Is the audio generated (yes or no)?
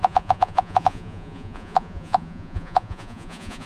yes